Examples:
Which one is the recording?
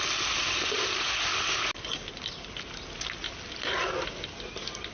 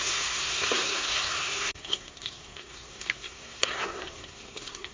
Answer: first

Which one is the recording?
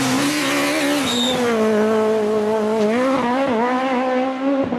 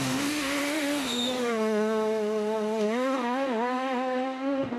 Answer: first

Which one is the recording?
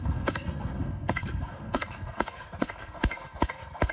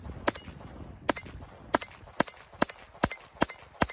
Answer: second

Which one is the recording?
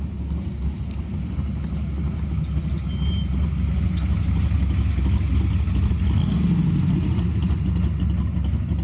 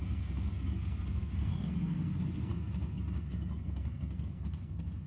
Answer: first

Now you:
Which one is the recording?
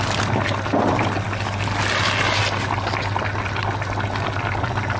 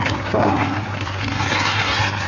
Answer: first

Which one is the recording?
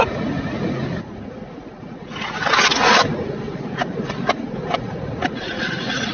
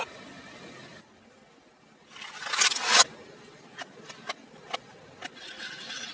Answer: second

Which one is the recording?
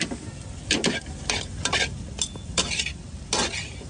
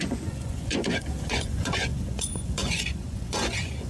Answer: first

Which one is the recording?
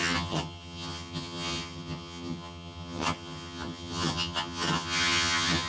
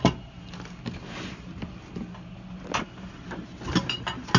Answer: second